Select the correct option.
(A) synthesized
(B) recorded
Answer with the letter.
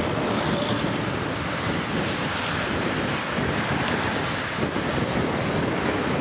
A